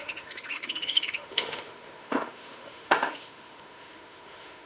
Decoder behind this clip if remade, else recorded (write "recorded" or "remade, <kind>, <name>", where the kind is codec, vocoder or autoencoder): remade, autoencoder, DAC-VAE